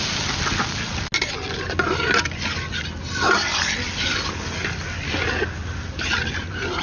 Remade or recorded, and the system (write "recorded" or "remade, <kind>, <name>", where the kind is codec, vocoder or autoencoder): recorded